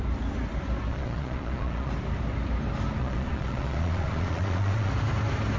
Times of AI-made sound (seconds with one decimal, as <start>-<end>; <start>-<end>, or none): 0.9-1.9; 3.0-4.9

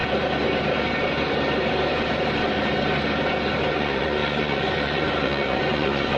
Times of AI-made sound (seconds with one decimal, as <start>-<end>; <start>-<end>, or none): 3.7-6.2

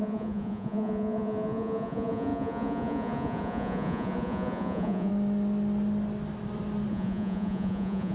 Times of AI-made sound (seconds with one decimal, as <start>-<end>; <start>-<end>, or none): 0.0-5.1; 6.9-8.1

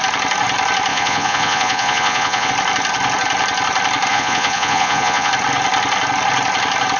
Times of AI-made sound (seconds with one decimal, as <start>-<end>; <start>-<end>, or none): 0.9-2.5; 4.1-5.3

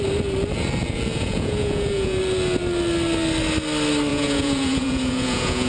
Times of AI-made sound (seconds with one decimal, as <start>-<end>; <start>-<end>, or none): 1.1-2.2; 4.1-5.7

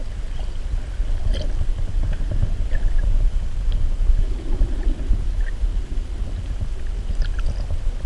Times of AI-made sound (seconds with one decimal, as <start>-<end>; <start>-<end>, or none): none